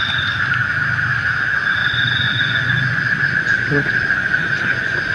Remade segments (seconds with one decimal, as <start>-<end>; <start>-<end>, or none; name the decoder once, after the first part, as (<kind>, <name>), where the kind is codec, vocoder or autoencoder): 1.8-5.1 (vocoder, Vocos)